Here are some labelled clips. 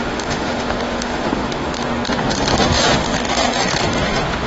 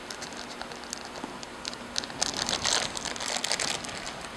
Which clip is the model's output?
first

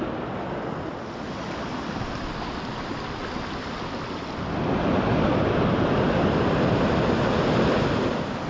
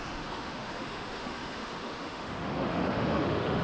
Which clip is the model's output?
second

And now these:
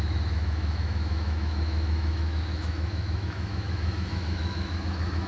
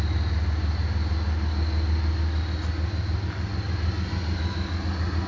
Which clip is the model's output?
first